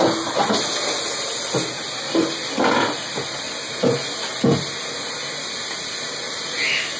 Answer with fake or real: real